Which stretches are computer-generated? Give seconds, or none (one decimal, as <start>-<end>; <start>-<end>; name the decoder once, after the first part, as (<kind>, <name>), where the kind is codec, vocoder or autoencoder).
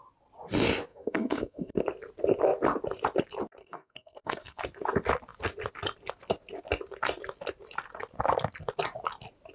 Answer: 0.9-1.8 (codec, SNAC); 3.6-4.6